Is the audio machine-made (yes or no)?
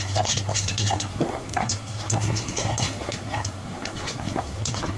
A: yes